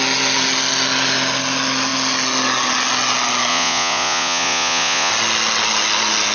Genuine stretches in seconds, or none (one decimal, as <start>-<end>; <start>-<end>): 0.0-3.5; 5.1-6.3